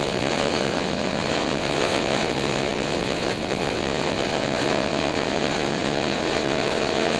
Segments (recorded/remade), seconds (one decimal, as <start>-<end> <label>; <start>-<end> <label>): 0.0-7.2 remade

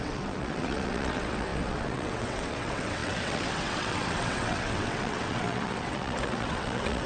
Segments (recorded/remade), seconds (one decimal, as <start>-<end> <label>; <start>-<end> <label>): 0.0-7.1 remade

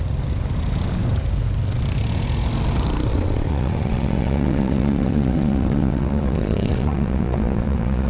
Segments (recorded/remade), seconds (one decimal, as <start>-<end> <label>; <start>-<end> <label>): 0.0-3.1 recorded; 3.1-8.1 remade

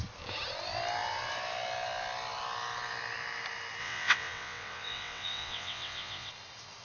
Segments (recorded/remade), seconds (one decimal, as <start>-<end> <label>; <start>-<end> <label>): 0.0-3.8 recorded; 3.8-6.3 remade; 6.3-6.8 recorded

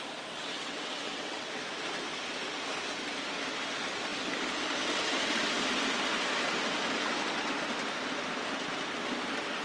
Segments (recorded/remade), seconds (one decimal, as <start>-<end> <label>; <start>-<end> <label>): 0.0-0.4 recorded; 0.4-1.6 remade; 1.6-9.6 recorded

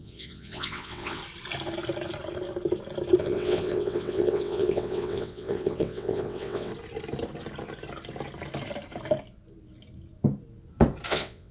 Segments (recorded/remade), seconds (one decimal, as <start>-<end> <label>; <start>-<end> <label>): 0.0-1.2 remade; 1.2-3.2 recorded; 3.2-6.7 remade; 6.7-11.1 recorded; 11.1-11.5 remade

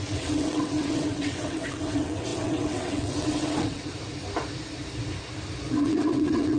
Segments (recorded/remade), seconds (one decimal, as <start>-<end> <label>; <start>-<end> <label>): 0.0-3.9 remade; 3.9-5.8 recorded; 5.8-6.6 remade

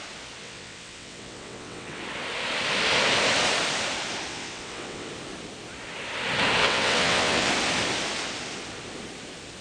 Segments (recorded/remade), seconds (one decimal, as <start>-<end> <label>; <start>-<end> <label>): 0.0-0.4 recorded; 0.4-2.0 remade; 2.0-4.3 recorded; 4.3-5.1 remade; 5.1-6.6 recorded; 6.6-7.5 remade; 7.5-9.6 recorded